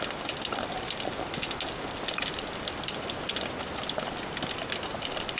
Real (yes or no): yes